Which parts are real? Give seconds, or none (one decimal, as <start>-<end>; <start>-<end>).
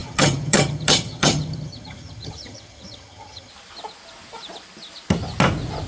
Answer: 3.5-5.9